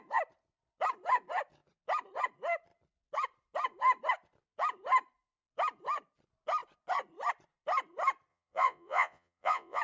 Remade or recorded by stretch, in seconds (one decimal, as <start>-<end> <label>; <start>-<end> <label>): 0.0-8.3 recorded; 8.3-9.8 remade

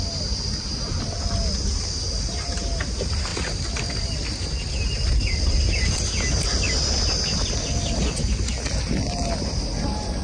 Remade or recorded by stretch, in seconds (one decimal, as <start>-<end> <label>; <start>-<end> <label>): 0.0-10.2 recorded